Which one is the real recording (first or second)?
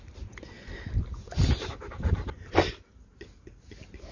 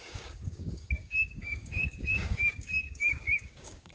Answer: first